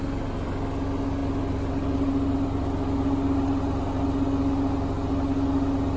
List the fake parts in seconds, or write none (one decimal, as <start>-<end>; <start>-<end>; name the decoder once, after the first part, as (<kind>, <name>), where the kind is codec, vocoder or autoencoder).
none